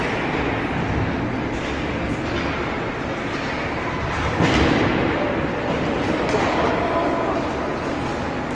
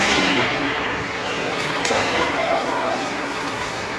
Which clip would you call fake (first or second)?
second